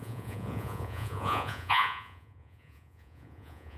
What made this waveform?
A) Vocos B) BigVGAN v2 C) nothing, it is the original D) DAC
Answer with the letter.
A